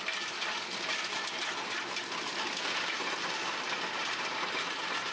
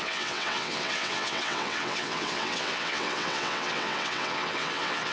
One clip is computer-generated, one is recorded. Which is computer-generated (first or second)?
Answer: second